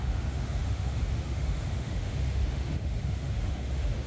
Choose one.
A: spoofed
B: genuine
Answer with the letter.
A